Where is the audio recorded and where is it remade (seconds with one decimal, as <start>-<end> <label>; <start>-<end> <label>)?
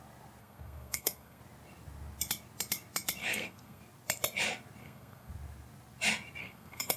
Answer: 0.0-0.4 recorded; 0.4-1.4 remade; 1.4-3.2 recorded; 3.2-3.8 remade; 3.8-4.8 recorded; 4.8-5.3 remade; 5.3-6.4 recorded; 6.4-7.0 remade